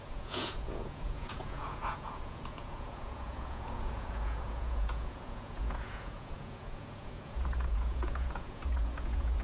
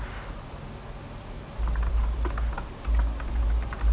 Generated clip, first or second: first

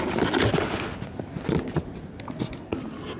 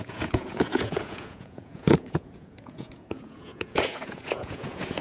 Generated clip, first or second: second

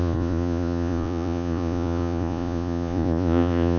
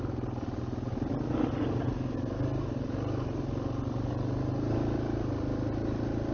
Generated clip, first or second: first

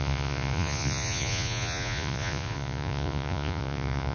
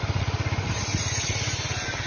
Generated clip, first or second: first